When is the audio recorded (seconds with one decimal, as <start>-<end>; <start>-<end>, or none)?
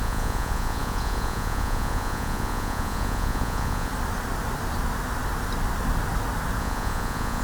3.9-6.6